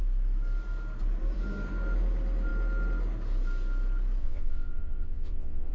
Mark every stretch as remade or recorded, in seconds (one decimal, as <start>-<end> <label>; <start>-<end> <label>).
0.0-4.2 recorded; 4.2-5.7 remade